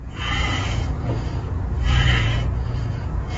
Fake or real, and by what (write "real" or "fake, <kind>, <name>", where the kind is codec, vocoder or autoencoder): fake, vocoder, Vocos